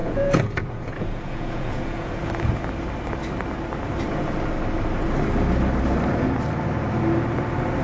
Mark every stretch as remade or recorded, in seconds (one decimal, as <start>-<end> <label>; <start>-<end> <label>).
0.0-2.3 remade; 2.3-7.8 recorded